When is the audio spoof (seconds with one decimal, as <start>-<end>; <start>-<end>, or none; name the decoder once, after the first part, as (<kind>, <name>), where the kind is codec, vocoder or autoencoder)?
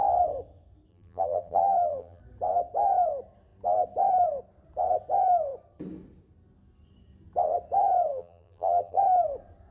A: 0.9-2.2 (vocoder, BigVGAN v2); 8.1-9.0